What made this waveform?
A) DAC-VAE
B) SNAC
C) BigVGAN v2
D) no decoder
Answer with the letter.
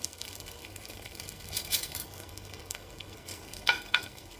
B